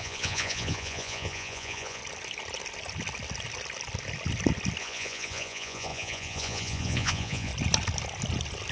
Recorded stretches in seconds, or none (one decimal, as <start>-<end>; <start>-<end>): 2.0-4.8; 7.5-8.7